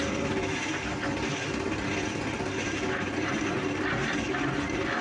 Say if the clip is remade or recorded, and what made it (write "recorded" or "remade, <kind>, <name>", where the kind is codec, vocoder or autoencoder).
recorded